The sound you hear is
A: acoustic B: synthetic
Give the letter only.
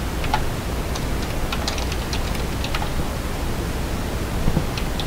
A